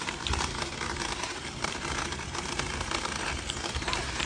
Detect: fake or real fake